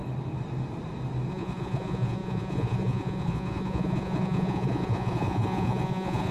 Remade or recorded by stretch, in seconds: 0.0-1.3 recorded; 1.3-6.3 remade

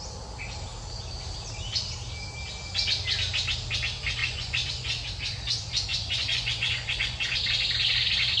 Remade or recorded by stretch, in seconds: 0.0-4.2 recorded; 4.2-4.9 remade; 4.9-5.9 recorded; 5.9-7.4 remade; 7.4-8.4 recorded

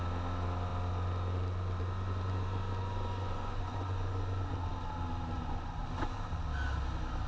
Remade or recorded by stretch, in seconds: 0.0-2.8 recorded; 2.8-4.5 remade; 4.5-5.3 recorded; 5.3-5.8 remade; 5.8-7.3 recorded

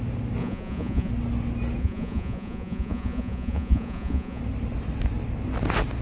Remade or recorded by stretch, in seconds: 0.0-0.4 recorded; 0.4-1.1 remade; 1.1-1.8 recorded; 1.8-4.4 remade; 4.4-6.0 recorded

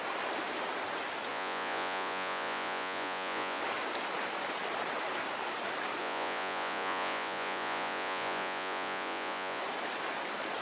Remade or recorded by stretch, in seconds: 0.0-1.3 recorded; 1.3-3.6 remade; 3.6-6.0 recorded; 6.0-9.6 remade; 9.6-10.6 recorded

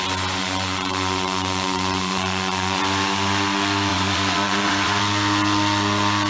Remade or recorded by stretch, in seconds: 0.0-0.4 recorded; 0.4-2.8 remade; 2.8-3.9 recorded; 3.9-5.0 remade; 5.0-6.3 recorded

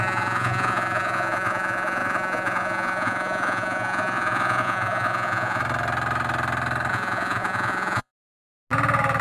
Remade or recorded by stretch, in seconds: 0.0-5.6 remade; 5.6-6.9 recorded; 6.9-8.1 remade; 8.1-9.2 recorded